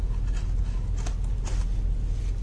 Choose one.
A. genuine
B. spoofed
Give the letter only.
A